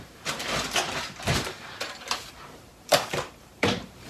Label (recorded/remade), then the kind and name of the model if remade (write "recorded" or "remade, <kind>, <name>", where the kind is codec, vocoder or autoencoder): remade, vocoder, BigVGAN v2